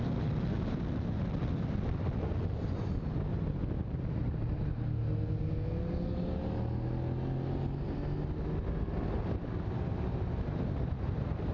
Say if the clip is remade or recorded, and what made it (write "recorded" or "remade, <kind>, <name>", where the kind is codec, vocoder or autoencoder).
recorded